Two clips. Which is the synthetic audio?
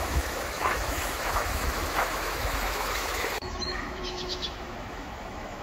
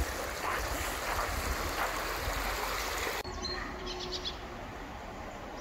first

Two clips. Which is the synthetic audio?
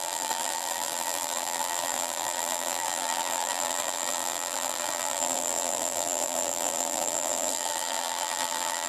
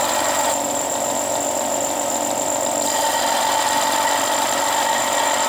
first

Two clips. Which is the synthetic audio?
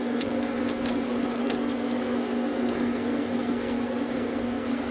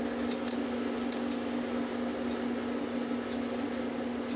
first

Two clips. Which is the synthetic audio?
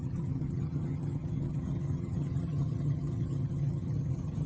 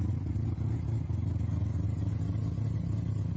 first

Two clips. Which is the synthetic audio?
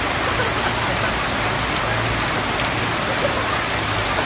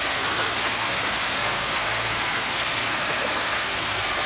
second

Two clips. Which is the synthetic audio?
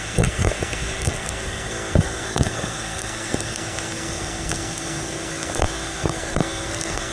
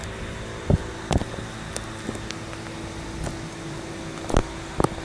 first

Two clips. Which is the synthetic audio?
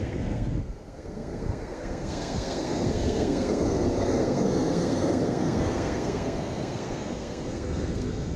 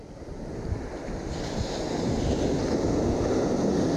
first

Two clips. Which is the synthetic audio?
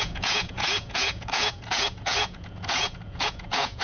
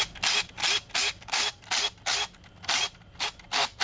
first